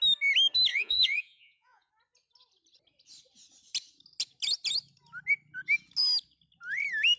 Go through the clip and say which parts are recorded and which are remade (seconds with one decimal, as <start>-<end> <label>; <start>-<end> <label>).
0.0-0.7 recorded; 0.7-1.9 remade; 1.9-7.2 recorded